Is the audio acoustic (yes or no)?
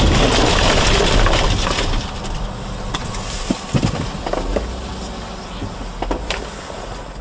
yes